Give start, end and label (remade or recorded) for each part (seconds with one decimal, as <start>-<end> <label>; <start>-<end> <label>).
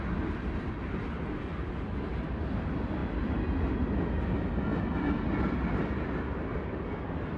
0.0-7.4 recorded